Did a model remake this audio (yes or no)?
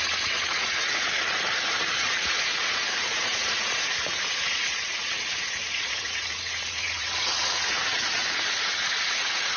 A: yes